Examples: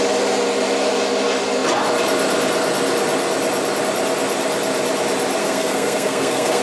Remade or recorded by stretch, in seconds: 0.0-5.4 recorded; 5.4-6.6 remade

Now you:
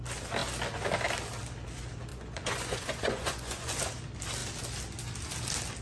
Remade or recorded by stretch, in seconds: 0.0-2.1 recorded; 2.1-3.8 remade; 3.8-5.8 recorded

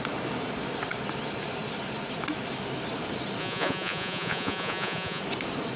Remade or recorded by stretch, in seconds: 0.0-3.4 recorded; 3.4-5.2 remade; 5.2-5.8 recorded

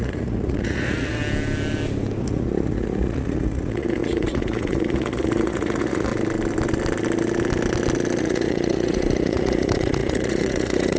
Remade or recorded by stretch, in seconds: 0.0-1.2 remade; 1.2-2.2 recorded; 2.2-6.1 remade; 6.1-8.2 recorded; 8.2-11.0 remade

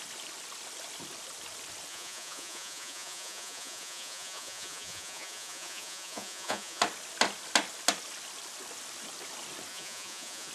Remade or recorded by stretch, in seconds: 0.0-1.9 recorded; 1.9-6.8 remade; 6.8-9.7 recorded; 9.7-10.5 remade